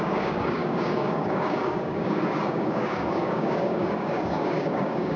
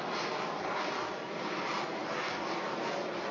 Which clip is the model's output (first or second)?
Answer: first